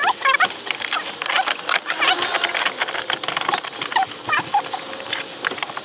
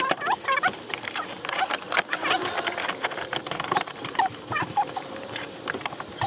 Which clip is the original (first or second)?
first